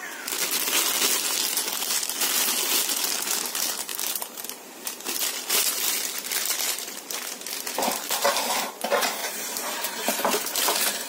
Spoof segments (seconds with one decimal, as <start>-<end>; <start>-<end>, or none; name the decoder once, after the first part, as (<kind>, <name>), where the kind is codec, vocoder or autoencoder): 3.9-4.4 (vocoder, BigVGAN v2); 9.2-10.6